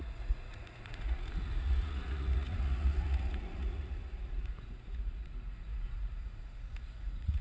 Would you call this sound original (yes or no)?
no